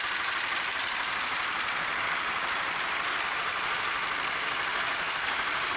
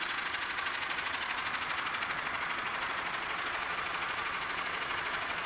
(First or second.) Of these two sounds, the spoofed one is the second